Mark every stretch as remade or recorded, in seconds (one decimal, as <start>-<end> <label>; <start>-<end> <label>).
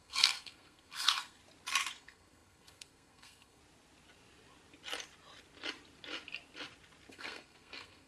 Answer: 0.0-1.4 remade; 1.4-1.9 recorded; 1.9-3.6 remade; 3.6-7.1 recorded; 7.1-8.1 remade